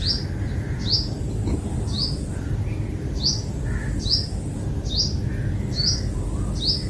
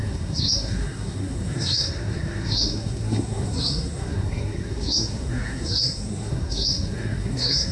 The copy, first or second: second